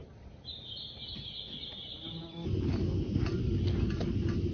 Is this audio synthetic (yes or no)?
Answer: no